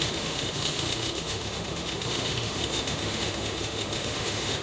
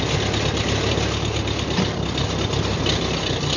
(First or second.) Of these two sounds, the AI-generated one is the first